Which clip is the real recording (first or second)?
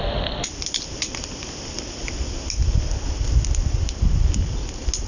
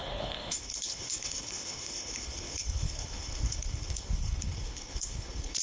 first